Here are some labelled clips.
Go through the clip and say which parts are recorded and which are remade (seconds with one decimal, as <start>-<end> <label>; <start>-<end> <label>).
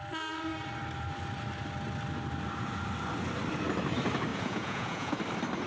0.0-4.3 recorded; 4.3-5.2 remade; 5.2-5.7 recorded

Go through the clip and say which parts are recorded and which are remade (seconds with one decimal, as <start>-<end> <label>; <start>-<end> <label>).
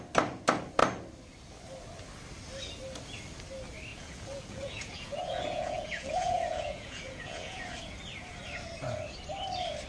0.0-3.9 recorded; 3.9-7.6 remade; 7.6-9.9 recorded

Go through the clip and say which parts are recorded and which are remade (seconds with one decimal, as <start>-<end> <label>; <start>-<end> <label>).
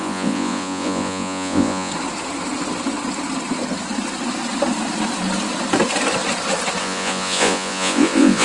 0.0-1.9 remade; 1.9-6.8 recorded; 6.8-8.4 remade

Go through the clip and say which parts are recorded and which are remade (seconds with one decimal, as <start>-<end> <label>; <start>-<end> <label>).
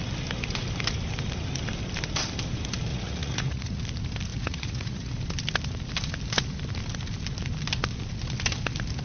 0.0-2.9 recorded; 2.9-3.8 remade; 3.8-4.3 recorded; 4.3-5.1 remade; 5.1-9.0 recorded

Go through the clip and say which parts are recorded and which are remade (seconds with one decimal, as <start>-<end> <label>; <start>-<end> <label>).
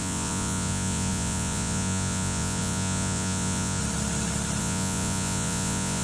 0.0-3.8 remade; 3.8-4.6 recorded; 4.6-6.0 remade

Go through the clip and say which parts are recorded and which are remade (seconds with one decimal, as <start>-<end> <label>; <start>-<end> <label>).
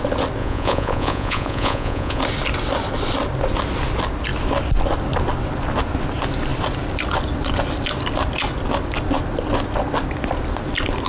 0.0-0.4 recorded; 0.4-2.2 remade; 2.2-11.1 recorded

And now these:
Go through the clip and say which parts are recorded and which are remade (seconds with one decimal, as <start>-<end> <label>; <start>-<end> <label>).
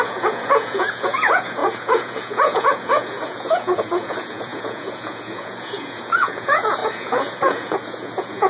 0.0-8.5 remade